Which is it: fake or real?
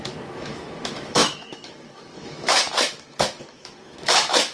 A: fake